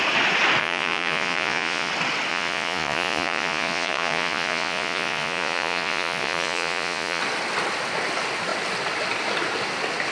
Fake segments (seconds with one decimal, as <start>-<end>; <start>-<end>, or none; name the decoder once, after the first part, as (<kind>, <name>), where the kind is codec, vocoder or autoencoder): 0.6-1.9 (vocoder, Vocos); 2.3-7.2